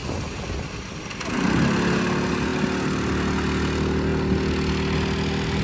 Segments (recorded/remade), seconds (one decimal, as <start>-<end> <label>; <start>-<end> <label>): 0.0-5.6 recorded